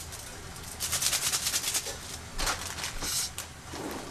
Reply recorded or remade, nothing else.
recorded